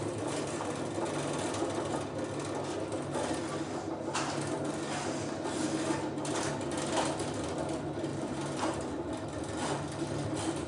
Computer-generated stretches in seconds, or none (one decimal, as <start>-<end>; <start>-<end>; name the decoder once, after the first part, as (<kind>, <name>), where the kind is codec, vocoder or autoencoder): 0.0-0.7 (vocoder, BigVGAN v2); 8.1-9.1